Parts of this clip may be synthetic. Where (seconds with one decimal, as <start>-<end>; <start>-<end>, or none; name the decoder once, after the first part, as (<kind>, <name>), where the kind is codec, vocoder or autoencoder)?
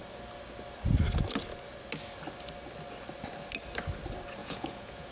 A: 4.4-5.1 (vocoder, Vocos)